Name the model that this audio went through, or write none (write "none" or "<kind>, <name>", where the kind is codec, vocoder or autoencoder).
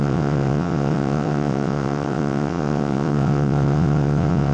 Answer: vocoder, WaveNeXt